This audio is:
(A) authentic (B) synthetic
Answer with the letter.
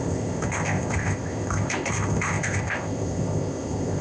B